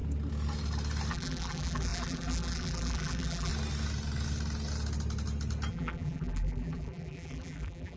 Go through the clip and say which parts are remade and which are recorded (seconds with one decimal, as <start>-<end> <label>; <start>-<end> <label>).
0.0-1.1 recorded; 1.1-3.5 remade; 3.5-5.7 recorded; 5.7-8.0 remade